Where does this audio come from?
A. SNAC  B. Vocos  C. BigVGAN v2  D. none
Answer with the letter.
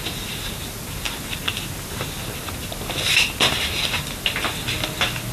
D